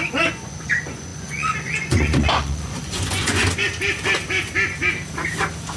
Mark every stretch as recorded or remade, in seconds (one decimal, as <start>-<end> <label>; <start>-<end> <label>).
0.0-3.4 remade; 3.4-5.8 recorded